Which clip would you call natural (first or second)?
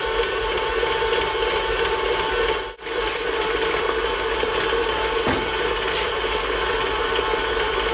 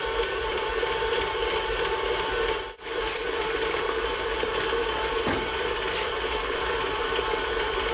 first